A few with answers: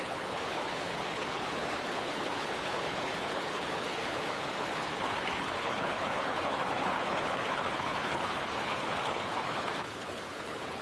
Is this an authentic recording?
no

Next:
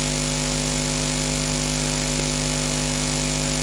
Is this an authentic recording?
yes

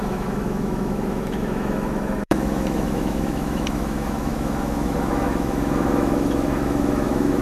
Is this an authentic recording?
no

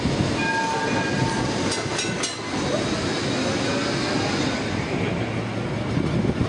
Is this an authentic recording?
yes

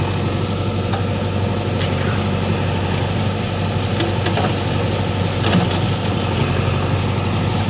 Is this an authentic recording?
yes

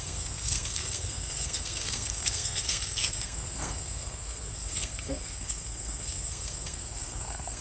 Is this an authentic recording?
no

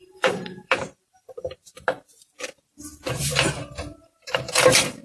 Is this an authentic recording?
no